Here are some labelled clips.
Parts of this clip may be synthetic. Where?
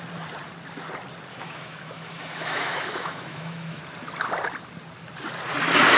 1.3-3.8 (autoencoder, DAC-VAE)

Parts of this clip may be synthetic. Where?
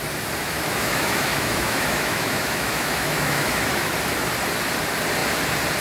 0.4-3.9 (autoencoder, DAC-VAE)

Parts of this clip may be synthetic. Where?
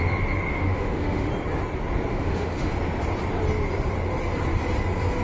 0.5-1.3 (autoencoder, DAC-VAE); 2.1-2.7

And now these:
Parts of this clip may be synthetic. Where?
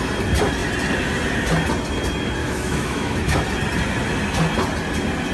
2.4-3.4 (autoencoder, DAC-VAE)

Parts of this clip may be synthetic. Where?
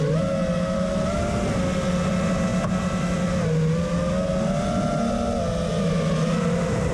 none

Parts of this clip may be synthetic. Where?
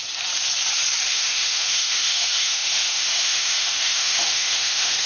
1.1-5.1 (autoencoder, DAC-VAE)